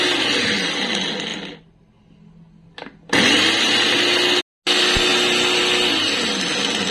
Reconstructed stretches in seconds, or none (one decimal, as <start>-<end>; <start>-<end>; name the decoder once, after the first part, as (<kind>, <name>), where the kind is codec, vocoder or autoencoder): none